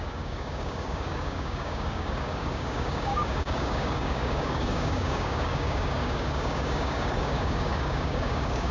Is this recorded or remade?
remade